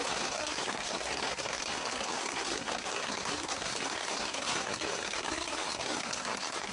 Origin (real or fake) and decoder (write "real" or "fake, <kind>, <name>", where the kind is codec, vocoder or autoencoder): fake, codec, SNAC